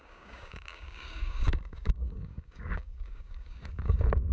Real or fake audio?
fake